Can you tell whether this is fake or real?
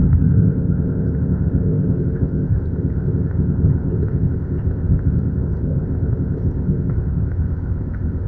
fake